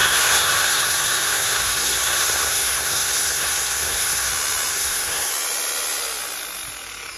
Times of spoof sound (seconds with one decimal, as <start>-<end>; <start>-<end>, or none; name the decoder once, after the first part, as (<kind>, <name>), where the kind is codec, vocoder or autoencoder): 0.0-4.3 (codec, SNAC); 4.7-5.3